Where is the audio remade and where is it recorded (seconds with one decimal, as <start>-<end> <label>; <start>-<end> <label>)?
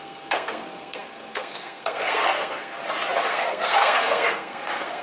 0.0-2.8 remade; 2.8-3.3 recorded; 3.3-5.0 remade